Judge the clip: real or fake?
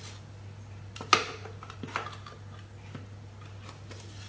real